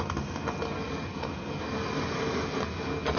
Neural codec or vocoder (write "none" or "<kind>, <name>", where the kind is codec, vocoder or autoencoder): none